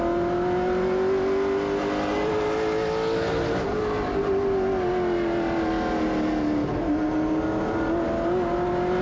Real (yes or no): yes